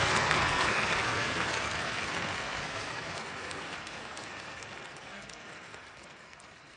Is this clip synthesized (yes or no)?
yes